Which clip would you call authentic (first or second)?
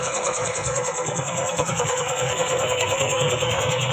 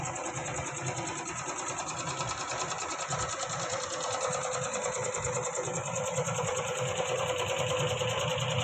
second